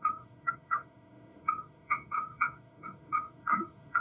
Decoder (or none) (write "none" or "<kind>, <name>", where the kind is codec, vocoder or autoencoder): autoencoder, DAC-VAE